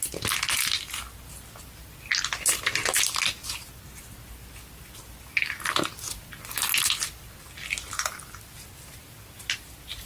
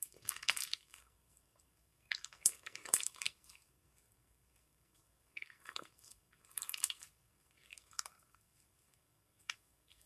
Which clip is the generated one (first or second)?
second